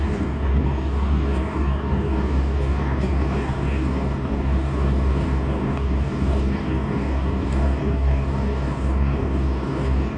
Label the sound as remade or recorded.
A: remade